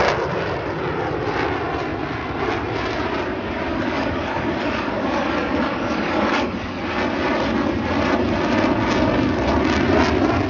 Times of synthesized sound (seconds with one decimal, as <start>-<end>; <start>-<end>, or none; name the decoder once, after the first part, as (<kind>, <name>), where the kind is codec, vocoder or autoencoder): 3.7-6.8 (codec, DAC)